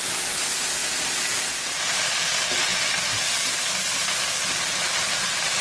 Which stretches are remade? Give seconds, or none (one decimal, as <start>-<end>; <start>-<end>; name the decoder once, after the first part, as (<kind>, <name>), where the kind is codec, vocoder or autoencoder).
none